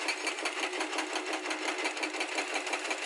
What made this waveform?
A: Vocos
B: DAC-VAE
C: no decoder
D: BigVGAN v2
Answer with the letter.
C